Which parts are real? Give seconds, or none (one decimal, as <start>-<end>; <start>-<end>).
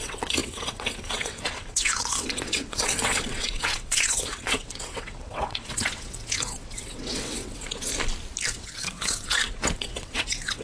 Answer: 7.9-8.5